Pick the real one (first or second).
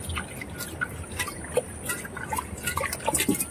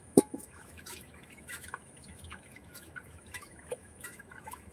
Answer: first